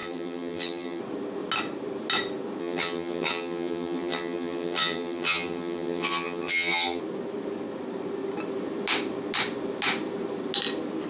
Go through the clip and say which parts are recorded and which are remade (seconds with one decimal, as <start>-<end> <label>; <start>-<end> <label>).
0.0-1.0 remade; 1.0-2.6 recorded; 2.6-7.0 remade; 7.0-11.1 recorded

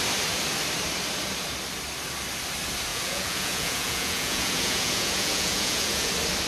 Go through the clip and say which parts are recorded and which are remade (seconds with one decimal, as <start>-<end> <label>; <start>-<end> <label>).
0.0-2.9 recorded; 2.9-6.1 remade; 6.1-6.5 recorded